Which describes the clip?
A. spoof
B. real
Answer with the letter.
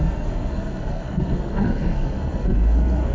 A